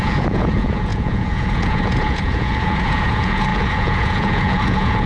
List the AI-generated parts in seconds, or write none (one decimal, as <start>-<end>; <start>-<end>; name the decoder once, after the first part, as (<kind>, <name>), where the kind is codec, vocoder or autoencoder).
0.0-5.1 (vocoder, Vocos)